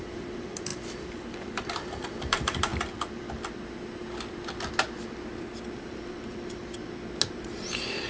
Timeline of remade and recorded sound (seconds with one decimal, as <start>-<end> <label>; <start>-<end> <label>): 0.0-2.7 remade; 2.7-5.9 recorded; 5.9-6.6 remade; 6.6-7.4 recorded; 7.4-8.1 remade